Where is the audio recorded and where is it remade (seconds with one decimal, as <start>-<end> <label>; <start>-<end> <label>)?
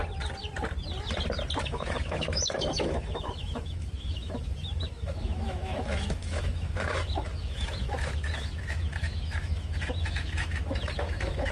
0.0-1.6 recorded; 1.6-11.5 remade